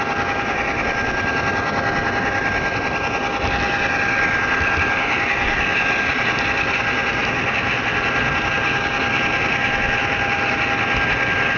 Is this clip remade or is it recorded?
recorded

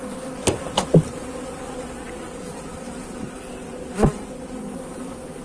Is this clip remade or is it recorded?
recorded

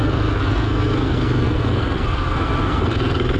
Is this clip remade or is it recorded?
remade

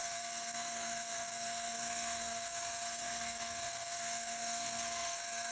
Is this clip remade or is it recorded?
remade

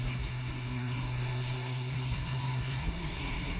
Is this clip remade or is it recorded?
remade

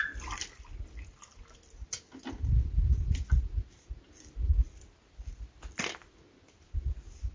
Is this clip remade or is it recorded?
recorded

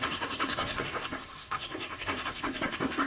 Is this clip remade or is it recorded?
remade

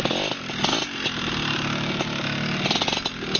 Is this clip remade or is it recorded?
recorded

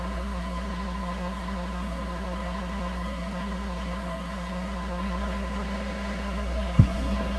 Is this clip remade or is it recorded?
remade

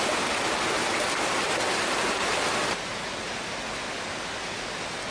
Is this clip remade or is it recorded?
recorded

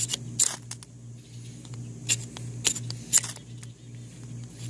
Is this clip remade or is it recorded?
recorded